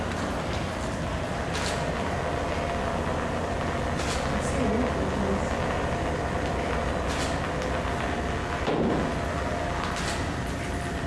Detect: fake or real real